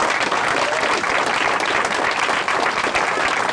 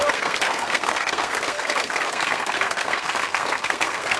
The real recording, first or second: first